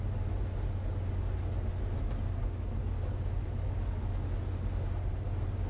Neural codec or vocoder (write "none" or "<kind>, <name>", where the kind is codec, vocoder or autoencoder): none